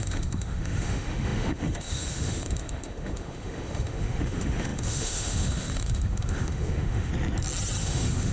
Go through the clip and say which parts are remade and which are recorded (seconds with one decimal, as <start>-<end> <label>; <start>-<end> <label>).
0.0-7.1 remade; 7.1-7.8 recorded; 7.8-8.3 remade